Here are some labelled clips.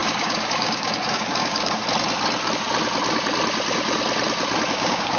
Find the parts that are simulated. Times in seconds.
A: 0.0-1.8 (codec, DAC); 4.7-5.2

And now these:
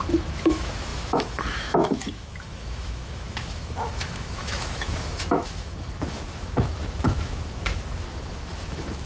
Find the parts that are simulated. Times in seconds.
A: 0.0-9.1 (autoencoder, DAC-VAE)

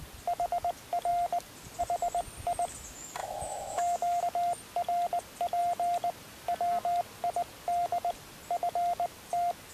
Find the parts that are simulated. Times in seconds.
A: 3.2-4.2 (autoencoder, DAC-VAE)

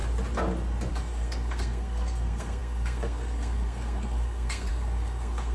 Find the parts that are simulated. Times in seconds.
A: 0.9-5.5 (codec, SNAC)

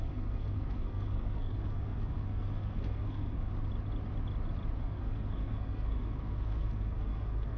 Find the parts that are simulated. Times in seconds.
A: 0.0-3.5 (codec, SNAC); 4.8-7.6

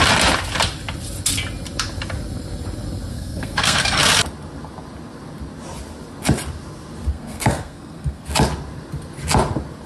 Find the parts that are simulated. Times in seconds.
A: 3.1-4.0 (codec, SNAC); 7.1-8.3